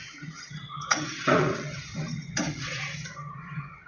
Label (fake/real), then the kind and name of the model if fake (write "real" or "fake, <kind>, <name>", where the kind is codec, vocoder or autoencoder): fake, vocoder, WaveNeXt